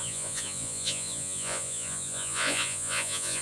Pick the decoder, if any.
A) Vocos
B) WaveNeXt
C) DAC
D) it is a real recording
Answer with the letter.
A